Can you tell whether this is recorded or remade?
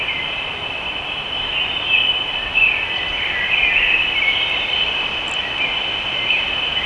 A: recorded